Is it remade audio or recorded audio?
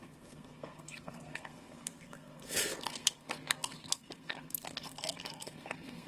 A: remade